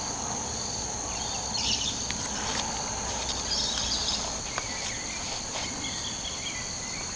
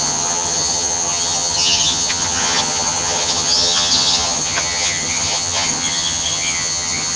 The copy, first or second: second